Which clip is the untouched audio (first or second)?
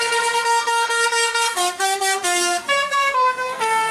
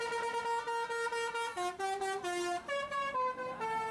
second